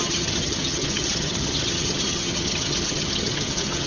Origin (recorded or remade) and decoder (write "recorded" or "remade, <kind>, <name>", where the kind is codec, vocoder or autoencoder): remade, vocoder, HiFi-GAN